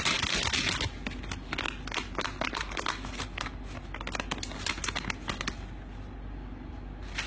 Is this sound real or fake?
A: real